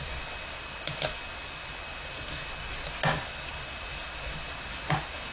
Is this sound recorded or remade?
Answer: recorded